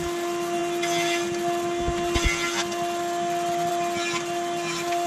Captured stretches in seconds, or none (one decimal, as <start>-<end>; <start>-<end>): 0.0-5.1